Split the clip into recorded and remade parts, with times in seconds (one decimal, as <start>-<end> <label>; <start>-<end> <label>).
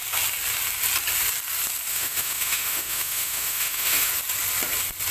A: 0.0-1.9 recorded; 1.9-4.1 remade; 4.1-5.1 recorded